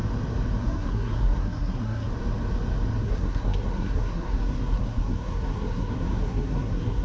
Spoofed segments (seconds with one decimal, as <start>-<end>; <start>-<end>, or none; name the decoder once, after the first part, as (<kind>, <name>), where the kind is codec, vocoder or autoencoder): 0.6-2.1 (codec, SNAC); 3.0-7.0